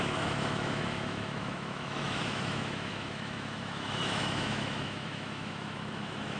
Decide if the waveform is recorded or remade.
remade